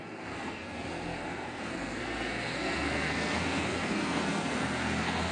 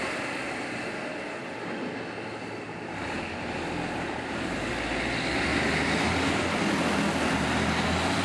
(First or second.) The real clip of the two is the second